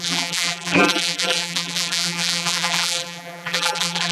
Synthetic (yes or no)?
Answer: yes